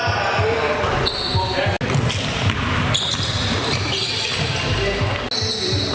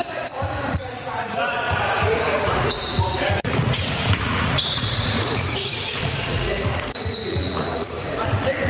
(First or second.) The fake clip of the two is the second